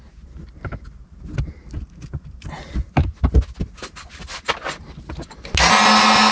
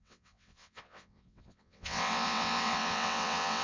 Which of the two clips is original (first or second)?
first